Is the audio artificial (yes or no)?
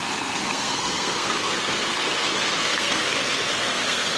yes